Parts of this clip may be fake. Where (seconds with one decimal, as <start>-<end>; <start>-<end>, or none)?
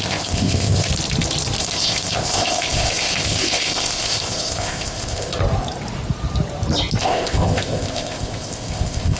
0.0-0.9; 1.6-5.4; 7.0-9.2